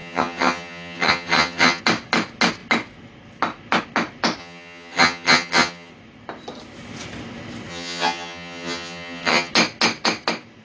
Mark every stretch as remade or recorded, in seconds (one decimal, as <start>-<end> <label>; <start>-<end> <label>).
0.0-1.8 remade; 1.8-4.4 recorded; 4.4-5.9 remade; 5.9-7.7 recorded; 7.7-9.5 remade; 9.5-10.6 recorded